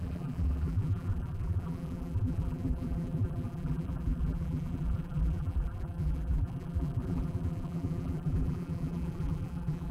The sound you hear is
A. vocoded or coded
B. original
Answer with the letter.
A